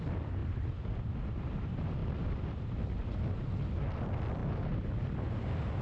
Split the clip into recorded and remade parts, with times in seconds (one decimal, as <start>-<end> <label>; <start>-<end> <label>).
0.0-5.8 recorded